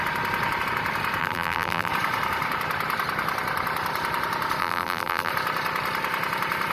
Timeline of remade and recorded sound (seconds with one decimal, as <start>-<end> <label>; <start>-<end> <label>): 0.0-1.2 recorded; 1.2-1.9 remade; 1.9-4.6 recorded; 4.6-5.3 remade; 5.3-6.7 recorded